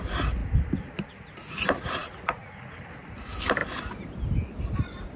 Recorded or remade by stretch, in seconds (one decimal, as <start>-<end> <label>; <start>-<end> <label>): 0.0-5.2 recorded